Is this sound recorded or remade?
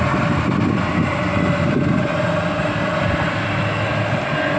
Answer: recorded